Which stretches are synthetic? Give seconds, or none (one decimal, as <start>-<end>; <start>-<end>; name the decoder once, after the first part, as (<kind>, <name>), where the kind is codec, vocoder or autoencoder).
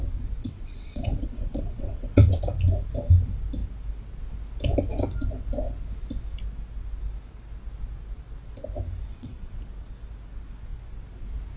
0.4-2.4 (vocoder, WaveNeXt); 9.1-9.6